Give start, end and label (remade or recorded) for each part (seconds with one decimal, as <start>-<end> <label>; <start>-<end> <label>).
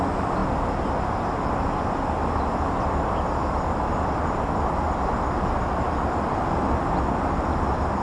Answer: 0.0-8.0 recorded